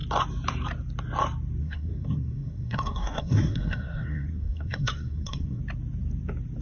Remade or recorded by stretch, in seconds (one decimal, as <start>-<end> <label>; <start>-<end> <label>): 0.0-1.6 recorded; 1.6-5.6 remade; 5.6-6.6 recorded